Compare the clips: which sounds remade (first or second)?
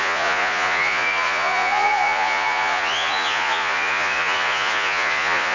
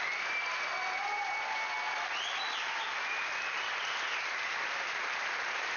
first